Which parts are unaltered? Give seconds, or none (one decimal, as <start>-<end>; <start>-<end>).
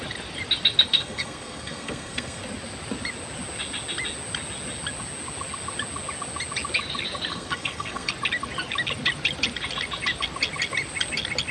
0.0-0.9; 2.4-7.3; 8.1-11.5